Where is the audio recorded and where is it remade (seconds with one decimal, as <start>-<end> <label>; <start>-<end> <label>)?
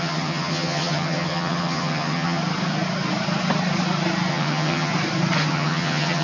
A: 0.0-2.4 remade; 2.4-4.3 recorded; 4.3-4.9 remade; 4.9-5.5 recorded; 5.5-6.2 remade